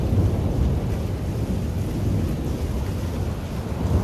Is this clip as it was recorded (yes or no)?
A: yes